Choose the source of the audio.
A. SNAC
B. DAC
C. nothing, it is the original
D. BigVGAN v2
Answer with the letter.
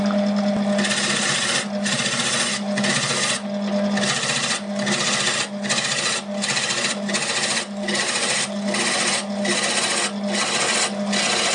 C